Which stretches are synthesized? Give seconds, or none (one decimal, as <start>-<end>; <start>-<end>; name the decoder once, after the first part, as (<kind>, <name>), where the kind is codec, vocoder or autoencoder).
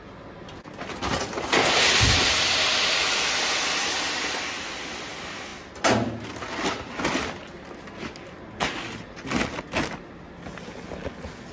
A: none